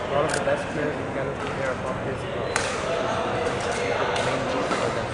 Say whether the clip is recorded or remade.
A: recorded